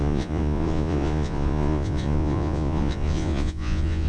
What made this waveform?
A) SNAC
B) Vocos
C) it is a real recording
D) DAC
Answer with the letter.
B